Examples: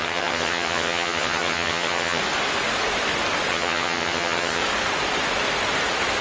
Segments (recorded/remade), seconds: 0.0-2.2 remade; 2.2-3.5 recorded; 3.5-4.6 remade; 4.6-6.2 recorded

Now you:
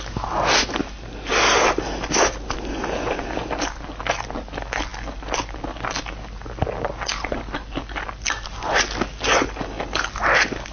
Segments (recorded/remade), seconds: 0.0-10.7 recorded